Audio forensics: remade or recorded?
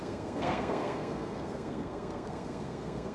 remade